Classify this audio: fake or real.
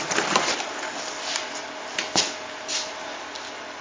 real